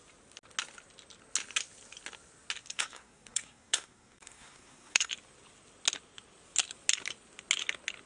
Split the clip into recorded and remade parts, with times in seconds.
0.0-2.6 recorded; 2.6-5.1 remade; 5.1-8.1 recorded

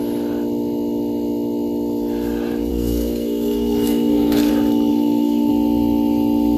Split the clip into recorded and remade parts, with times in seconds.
0.0-2.7 recorded; 2.7-4.5 remade; 4.5-4.9 recorded; 4.9-5.5 remade; 5.5-6.6 recorded

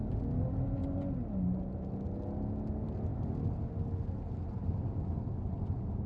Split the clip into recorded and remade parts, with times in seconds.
0.0-6.1 recorded

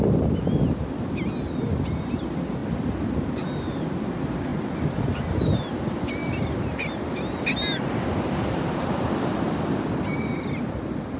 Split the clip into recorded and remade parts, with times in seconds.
0.0-11.2 recorded

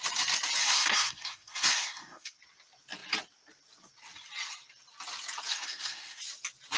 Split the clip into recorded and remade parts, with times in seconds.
0.0-0.6 recorded; 0.6-2.4 remade; 2.4-5.5 recorded; 5.5-6.2 remade; 6.2-6.8 recorded